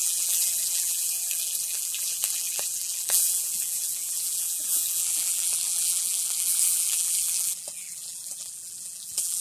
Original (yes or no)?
no